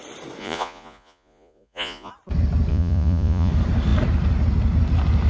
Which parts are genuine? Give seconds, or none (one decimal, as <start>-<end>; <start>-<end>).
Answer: 0.0-0.4; 2.1-2.7; 3.5-5.3